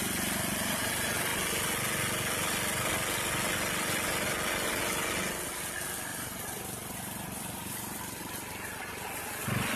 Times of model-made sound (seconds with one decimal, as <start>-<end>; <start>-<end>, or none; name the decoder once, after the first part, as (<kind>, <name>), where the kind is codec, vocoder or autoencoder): 6.1-8.3 (vocoder, BigVGAN v2)